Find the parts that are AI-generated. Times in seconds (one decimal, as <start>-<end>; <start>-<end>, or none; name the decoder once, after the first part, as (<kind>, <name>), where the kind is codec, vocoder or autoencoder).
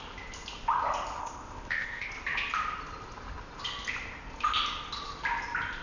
1.2-2.1 (codec, ZipCodec)